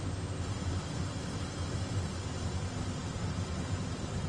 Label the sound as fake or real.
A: real